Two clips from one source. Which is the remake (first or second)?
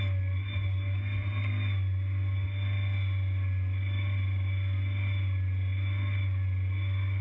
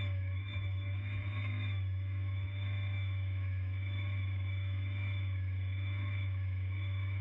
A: second